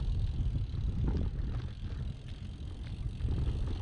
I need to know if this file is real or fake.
real